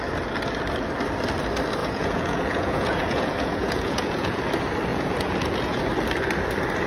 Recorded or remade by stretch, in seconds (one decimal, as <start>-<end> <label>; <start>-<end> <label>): 0.0-1.8 recorded; 1.8-4.4 remade; 4.4-4.9 recorded; 4.9-5.8 remade; 5.8-6.9 recorded